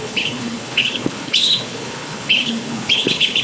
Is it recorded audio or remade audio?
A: remade